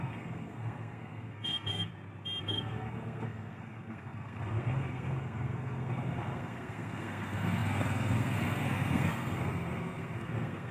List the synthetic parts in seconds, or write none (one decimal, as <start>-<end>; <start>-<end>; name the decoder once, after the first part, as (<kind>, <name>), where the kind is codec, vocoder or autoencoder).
0.0-1.9 (codec, SNAC); 2.4-10.7